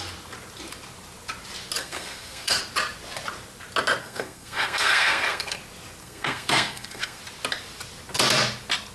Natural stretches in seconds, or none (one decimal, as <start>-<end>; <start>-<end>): 0.0-1.8; 2.6-4.0; 5.6-6.0; 7.2-8.9